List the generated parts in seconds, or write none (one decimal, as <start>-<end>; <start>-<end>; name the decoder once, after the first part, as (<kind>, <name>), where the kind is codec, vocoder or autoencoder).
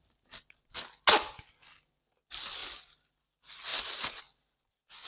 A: none